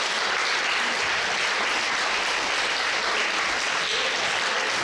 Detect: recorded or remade recorded